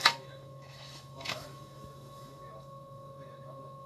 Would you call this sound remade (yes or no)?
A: yes